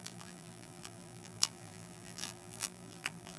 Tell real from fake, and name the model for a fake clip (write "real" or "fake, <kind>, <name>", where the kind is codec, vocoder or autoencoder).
fake, vocoder, BigVGAN v2